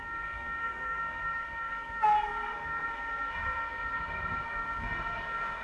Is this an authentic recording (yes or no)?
no